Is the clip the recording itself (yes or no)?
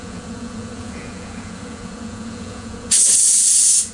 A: no